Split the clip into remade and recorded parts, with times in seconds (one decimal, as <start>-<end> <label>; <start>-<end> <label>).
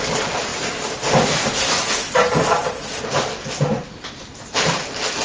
0.0-2.0 recorded; 2.0-3.3 remade; 3.3-3.7 recorded; 3.7-4.7 remade; 4.7-5.2 recorded